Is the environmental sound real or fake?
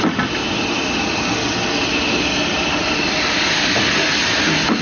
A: real